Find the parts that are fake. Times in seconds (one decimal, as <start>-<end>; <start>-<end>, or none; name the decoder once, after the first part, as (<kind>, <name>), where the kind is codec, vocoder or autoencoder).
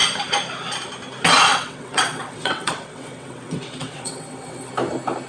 1.5-4.7 (vocoder, WaveNeXt)